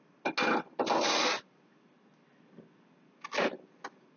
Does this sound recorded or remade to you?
recorded